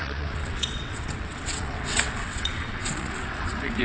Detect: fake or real fake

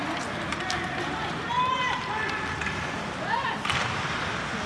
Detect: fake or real real